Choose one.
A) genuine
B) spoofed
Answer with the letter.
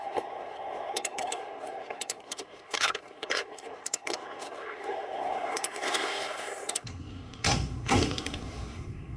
B